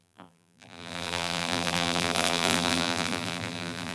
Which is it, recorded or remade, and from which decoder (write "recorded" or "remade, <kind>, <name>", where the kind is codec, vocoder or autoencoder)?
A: remade, vocoder, BigVGAN v2